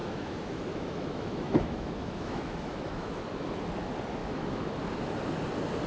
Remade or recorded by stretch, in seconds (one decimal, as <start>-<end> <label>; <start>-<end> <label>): 0.0-3.2 remade; 3.2-4.2 recorded; 4.2-4.8 remade; 4.8-5.9 recorded